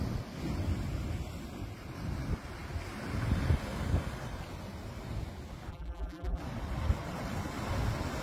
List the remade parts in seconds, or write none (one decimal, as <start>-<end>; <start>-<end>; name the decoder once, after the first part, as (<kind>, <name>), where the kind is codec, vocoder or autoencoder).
5.7-6.4 (vocoder, BigVGAN v2)